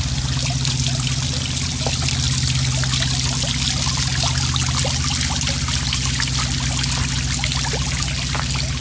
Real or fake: real